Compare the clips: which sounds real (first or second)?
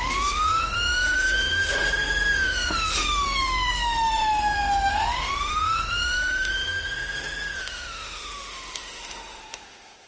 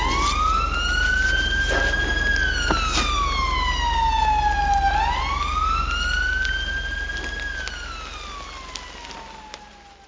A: second